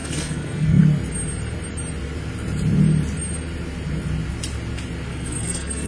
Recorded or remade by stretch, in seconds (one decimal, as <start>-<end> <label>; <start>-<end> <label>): 0.0-0.8 remade; 0.8-5.1 recorded; 5.1-5.9 remade